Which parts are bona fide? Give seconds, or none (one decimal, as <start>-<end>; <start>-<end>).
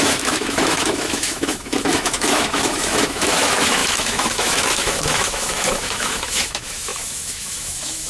none